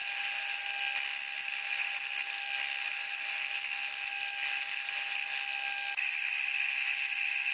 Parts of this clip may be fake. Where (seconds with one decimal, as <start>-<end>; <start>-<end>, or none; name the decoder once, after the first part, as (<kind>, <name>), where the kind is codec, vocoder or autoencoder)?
none